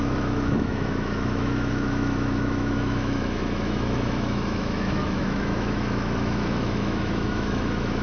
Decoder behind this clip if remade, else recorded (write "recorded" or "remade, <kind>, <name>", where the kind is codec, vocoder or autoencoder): remade, autoencoder, DAC-VAE